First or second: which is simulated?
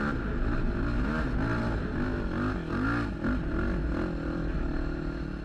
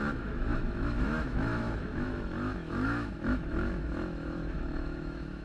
second